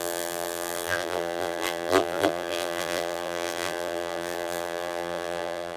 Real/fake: fake